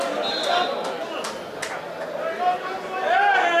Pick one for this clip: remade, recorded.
recorded